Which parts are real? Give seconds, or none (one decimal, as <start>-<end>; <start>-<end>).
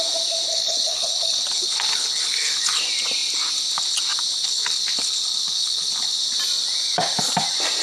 0.0-0.5; 2.8-4.4; 6.2-7.8